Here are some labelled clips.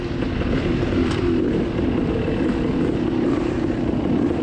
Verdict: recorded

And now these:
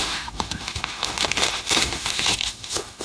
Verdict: remade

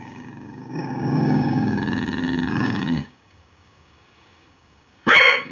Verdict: remade